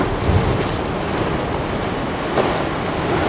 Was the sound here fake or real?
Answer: real